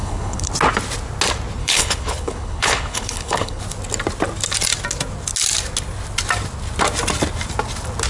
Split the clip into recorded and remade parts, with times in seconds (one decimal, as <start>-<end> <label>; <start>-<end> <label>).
0.0-0.5 remade; 0.5-1.6 recorded; 1.6-3.6 remade; 3.6-8.1 recorded